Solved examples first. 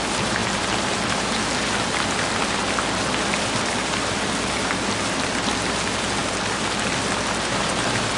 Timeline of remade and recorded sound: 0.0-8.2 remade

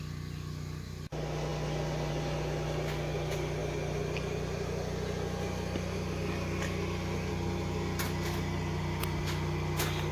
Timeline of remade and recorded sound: 0.0-10.1 recorded